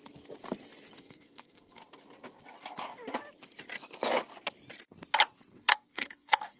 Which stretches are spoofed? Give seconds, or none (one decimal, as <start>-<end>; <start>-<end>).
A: 1.0-1.8; 5.6-6.6